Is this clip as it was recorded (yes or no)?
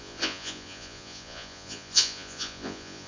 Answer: no